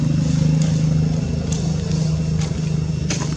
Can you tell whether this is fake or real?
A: real